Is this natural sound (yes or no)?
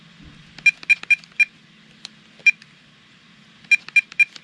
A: yes